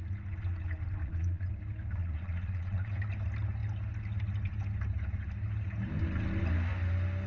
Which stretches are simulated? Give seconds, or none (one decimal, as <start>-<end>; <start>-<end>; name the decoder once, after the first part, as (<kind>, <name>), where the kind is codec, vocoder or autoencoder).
1.0-1.5 (vocoder, Vocos); 2.0-2.9